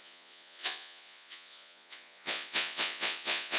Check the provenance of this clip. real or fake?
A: fake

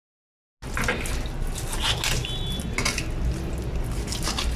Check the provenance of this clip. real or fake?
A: real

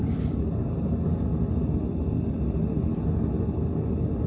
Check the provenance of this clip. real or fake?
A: real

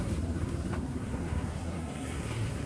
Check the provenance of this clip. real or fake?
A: fake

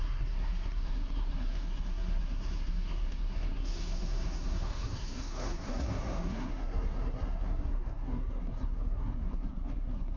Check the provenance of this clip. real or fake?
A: fake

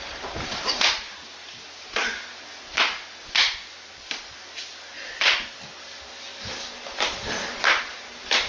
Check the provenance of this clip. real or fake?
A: real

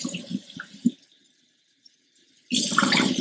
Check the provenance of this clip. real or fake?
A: fake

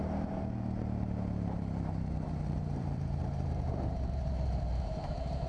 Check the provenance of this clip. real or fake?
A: fake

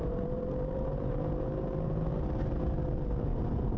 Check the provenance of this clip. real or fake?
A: fake